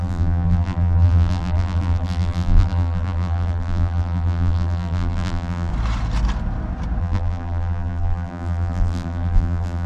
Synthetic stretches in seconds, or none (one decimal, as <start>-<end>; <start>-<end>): 0.0-5.7; 7.0-9.9